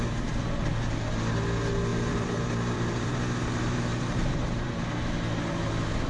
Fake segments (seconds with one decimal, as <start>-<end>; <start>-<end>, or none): 1.9-4.7